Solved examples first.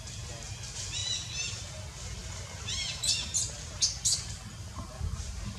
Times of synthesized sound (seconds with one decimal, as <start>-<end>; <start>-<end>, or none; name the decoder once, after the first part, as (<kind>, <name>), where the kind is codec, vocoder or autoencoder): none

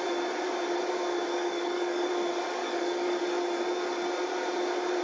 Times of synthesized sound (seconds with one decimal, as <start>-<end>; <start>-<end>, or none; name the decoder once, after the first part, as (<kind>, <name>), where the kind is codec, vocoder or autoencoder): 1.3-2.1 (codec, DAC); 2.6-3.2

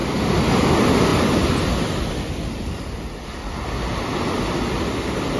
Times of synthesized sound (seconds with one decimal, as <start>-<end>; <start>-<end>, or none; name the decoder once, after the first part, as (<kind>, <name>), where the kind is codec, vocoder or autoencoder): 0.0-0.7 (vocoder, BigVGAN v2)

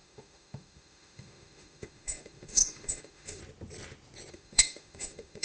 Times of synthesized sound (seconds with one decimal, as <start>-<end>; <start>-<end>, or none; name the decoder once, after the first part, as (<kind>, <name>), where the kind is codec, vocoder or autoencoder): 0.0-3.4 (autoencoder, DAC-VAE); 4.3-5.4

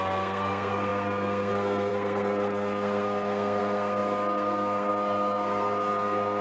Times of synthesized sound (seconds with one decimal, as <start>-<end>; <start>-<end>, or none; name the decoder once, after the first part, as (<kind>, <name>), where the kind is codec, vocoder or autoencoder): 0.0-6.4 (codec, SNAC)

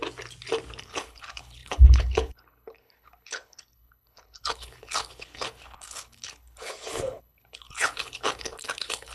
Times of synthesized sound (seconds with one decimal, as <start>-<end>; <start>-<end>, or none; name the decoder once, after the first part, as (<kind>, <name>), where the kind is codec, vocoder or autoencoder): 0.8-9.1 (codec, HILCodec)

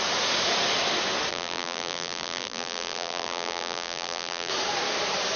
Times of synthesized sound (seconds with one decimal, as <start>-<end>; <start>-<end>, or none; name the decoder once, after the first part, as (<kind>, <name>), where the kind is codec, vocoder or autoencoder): 1.3-4.5 (vocoder, BigVGAN v2)

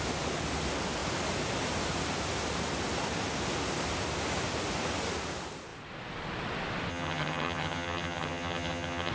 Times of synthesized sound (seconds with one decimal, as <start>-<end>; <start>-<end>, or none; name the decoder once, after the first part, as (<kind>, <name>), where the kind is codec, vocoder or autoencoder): 6.9-9.1 (vocoder, HiFi-GAN)